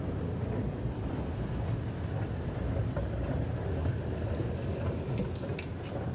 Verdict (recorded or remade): recorded